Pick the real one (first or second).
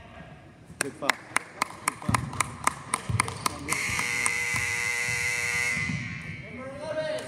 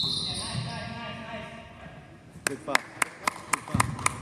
second